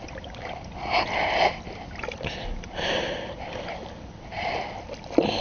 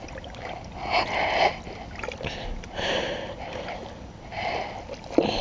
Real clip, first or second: second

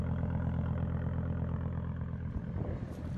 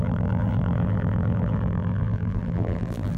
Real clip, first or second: first